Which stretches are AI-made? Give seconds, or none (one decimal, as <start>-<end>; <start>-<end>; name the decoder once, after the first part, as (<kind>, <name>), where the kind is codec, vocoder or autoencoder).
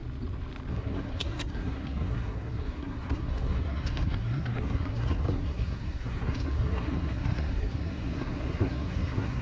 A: 0.7-9.4 (codec, SNAC)